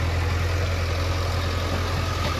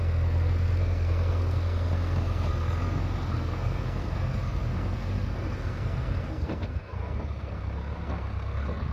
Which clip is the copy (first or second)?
second